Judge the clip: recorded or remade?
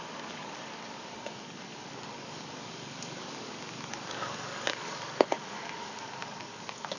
remade